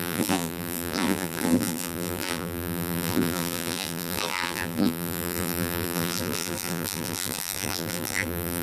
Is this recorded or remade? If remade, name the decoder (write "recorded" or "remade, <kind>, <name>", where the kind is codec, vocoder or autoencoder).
remade, vocoder, BigVGAN v2